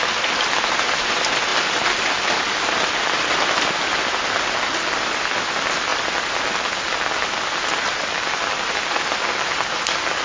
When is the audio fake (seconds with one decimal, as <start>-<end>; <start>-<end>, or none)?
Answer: none